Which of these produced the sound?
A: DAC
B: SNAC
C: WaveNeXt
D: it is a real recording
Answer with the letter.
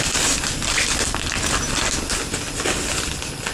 D